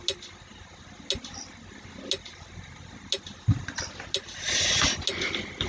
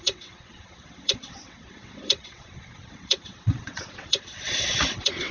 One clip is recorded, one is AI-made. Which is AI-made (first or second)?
second